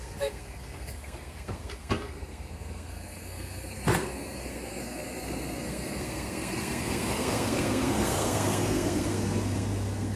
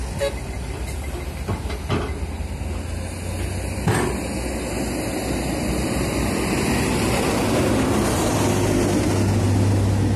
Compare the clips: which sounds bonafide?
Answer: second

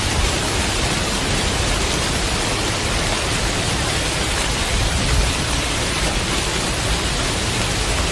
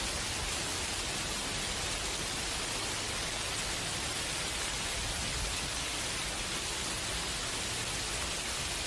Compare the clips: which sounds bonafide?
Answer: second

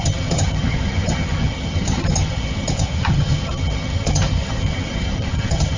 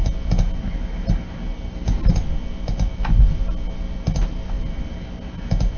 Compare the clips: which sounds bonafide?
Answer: second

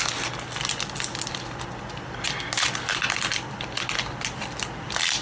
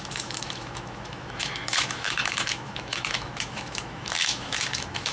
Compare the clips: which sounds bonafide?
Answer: first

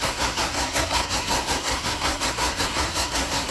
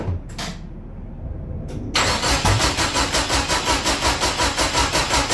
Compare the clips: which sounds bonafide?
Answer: second